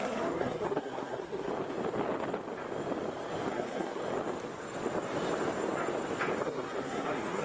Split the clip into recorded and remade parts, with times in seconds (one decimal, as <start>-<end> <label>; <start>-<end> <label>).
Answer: 0.0-1.5 remade; 1.5-3.5 recorded; 3.5-4.0 remade; 4.0-6.4 recorded; 6.4-7.4 remade